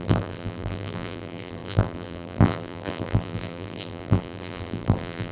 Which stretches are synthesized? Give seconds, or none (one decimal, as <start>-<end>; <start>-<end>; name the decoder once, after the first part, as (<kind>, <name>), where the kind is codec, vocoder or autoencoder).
0.0-5.3 (vocoder, BigVGAN v2)